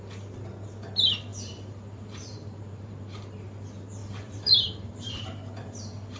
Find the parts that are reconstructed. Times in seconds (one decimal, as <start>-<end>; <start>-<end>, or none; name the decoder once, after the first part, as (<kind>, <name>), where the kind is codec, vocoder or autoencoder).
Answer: 1.3-3.4 (vocoder, BigVGAN v2); 4.0-6.2